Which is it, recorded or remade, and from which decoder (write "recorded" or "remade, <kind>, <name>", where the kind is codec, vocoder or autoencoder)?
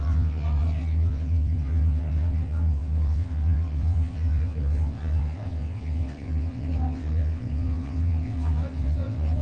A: remade, vocoder, WaveNeXt